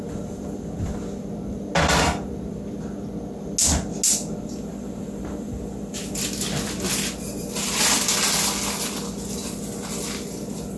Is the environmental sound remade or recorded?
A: recorded